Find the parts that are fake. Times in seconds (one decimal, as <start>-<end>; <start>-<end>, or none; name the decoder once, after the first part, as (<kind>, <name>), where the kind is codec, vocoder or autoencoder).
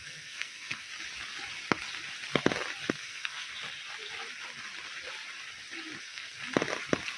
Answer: 0.0-0.9 (codec, SNAC); 2.9-3.5; 6.0-6.4